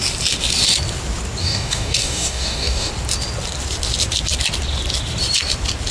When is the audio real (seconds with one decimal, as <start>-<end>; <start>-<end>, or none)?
0.0-1.4; 2.9-5.9